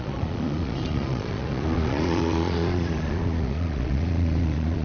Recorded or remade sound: remade